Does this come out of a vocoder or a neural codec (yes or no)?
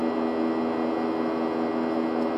no